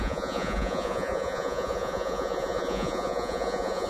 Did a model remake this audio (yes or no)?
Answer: yes